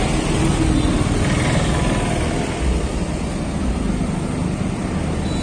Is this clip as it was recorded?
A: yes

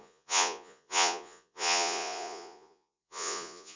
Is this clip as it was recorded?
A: no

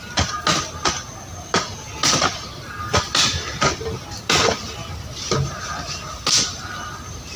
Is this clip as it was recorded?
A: yes